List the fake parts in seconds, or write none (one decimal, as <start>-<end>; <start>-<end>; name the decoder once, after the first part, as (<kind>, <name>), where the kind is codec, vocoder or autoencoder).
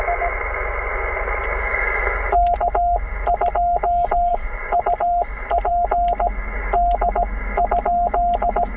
4.3-5.7 (vocoder, BigVGAN v2)